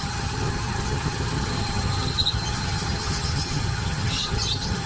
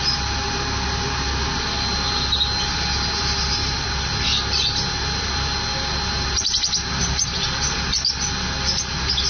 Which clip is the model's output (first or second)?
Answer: first